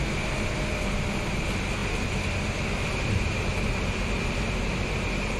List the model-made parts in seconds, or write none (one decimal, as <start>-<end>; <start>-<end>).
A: none